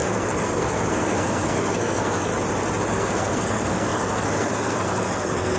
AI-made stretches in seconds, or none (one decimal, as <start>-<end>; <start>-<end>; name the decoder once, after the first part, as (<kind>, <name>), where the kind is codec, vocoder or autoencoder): 0.0-2.3 (codec, SNAC); 2.9-5.6